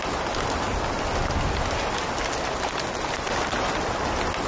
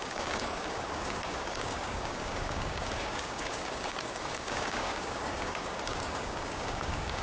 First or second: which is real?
first